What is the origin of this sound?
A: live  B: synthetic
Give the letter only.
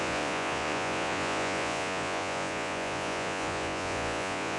B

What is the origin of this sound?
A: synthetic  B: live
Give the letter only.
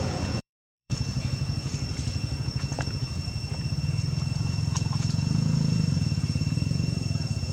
A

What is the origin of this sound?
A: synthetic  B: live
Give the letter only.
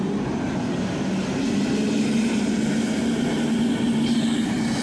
B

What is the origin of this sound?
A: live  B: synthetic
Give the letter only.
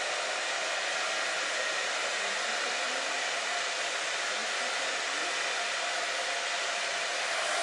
A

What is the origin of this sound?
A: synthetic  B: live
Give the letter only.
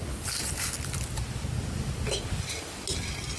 B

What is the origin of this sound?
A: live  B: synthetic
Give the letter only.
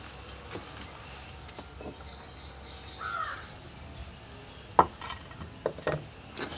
A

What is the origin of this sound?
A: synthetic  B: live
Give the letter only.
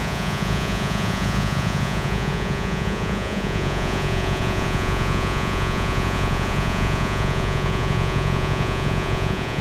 A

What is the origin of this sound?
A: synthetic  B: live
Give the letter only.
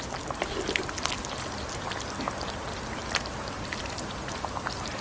B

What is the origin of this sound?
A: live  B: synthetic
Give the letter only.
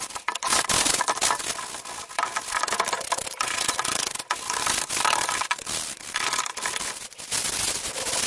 A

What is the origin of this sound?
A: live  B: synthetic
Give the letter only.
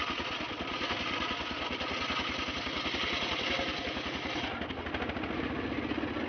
A